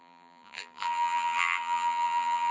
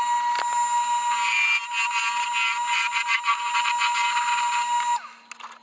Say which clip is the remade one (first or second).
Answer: first